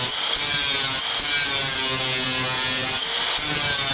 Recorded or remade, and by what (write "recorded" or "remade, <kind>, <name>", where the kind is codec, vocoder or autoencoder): recorded